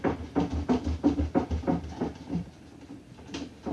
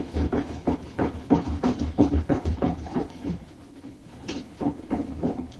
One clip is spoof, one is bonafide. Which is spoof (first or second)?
second